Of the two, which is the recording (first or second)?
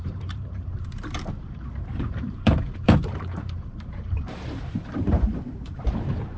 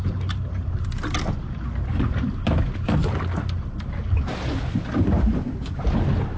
second